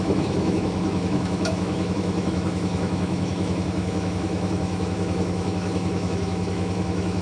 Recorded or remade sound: remade